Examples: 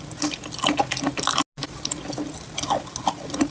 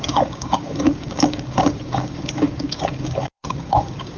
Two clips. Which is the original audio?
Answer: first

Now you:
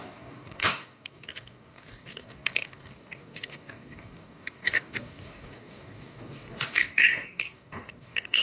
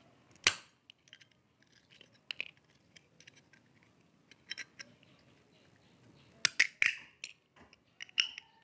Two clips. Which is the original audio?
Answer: second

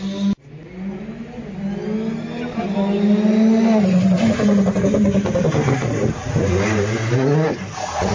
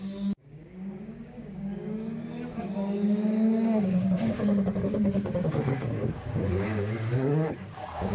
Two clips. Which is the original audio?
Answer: first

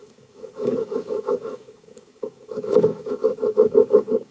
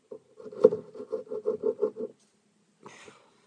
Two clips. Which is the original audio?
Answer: second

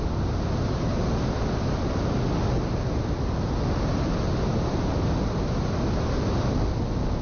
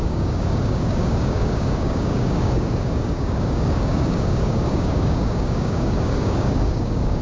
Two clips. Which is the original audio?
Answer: first